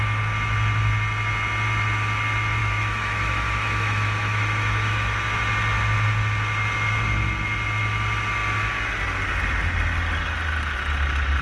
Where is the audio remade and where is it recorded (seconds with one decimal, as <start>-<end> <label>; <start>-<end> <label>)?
0.0-2.6 recorded; 2.6-5.3 remade; 5.3-11.4 recorded